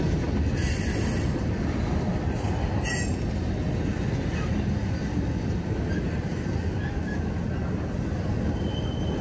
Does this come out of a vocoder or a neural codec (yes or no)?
no